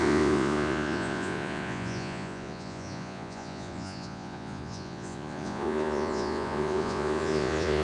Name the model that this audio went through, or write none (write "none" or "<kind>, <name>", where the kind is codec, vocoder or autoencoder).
vocoder, Vocos